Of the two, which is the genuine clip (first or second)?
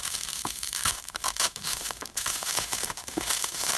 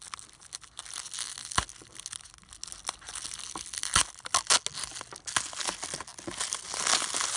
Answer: second